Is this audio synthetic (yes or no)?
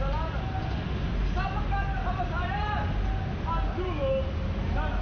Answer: no